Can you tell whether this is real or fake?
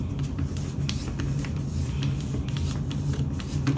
real